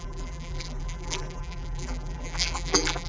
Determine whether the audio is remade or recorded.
remade